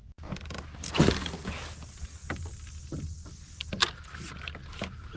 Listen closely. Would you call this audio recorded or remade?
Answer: recorded